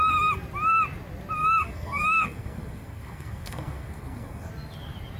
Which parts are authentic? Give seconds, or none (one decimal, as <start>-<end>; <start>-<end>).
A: 0.0-1.4; 4.5-5.2